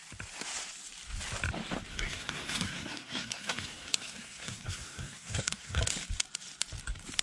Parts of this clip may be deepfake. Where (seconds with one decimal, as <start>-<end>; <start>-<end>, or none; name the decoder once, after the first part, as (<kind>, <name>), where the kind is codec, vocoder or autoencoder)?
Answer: 1.9-5.8 (codec, SNAC)